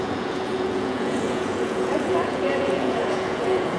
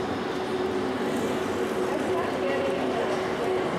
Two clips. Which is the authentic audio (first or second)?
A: second